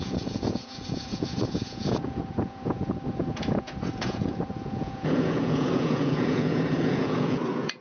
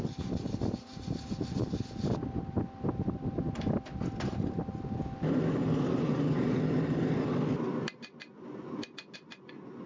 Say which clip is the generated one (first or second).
first